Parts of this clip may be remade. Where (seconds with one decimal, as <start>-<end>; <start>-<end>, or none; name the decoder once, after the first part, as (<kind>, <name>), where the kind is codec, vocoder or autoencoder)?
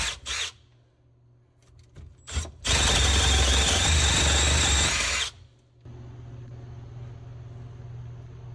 none